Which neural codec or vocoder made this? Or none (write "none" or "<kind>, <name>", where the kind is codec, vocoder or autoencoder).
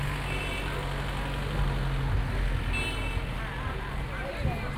none